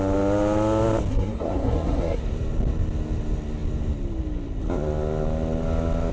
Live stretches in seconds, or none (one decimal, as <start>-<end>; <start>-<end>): 0.0-1.1; 2.2-6.1